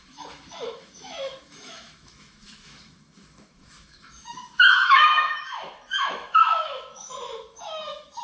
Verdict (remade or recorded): remade